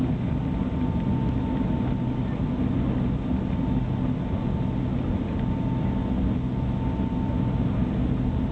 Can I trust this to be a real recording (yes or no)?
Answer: yes